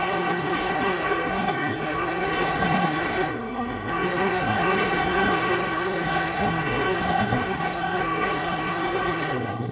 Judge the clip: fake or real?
fake